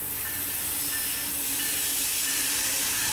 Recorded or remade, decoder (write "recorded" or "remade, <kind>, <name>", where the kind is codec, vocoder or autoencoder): recorded